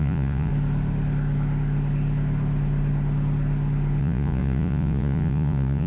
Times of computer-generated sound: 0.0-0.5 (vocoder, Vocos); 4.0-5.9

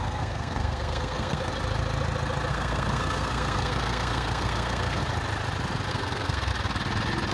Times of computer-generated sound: 0.0-1.5 (codec, SNAC); 2.5-5.0; 5.9-6.5

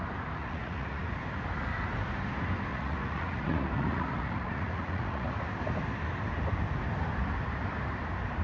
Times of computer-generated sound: 0.4-1.0 (vocoder, Vocos); 2.7-5.3

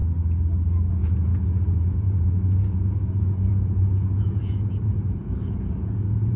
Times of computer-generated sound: 0.9-6.4 (vocoder, Vocos)

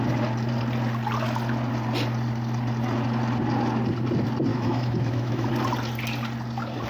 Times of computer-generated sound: 4.5-5.5 (autoencoder, DAC-VAE)

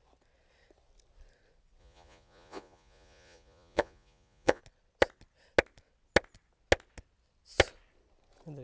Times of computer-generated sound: 1.8-4.6 (vocoder, Vocos)

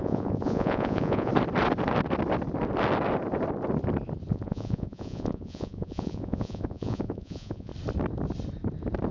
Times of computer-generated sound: 0.0-1.3 (vocoder, Vocos); 4.3-7.7